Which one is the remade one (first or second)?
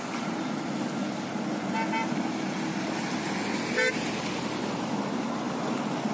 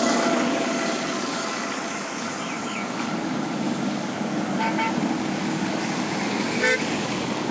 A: second